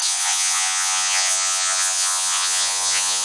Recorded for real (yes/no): no